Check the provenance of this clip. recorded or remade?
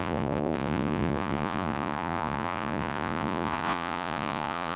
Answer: remade